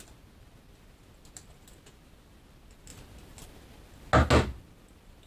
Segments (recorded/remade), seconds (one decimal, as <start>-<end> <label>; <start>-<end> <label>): 0.0-5.3 recorded